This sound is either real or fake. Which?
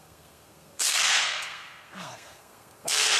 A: fake